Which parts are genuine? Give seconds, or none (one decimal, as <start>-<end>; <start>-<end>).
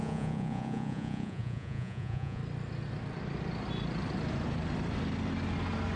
2.4-6.0